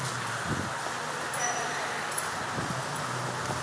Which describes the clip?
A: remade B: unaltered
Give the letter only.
B